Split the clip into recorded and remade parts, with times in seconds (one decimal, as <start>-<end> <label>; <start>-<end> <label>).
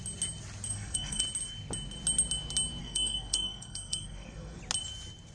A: 0.0-0.7 recorded; 0.7-1.2 remade; 1.2-2.8 recorded; 2.8-4.6 remade; 4.6-5.3 recorded